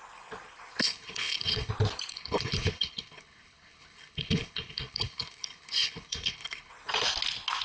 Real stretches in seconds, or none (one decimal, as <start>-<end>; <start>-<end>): 0.0-0.8; 1.7-2.1; 6.7-7.6